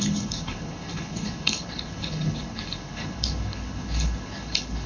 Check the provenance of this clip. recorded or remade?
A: remade